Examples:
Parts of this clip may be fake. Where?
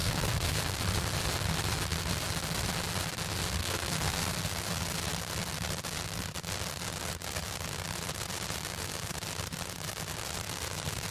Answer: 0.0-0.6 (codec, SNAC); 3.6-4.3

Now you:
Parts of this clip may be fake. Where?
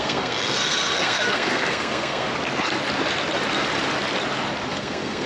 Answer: 0.0-2.3 (codec, SNAC); 4.7-5.3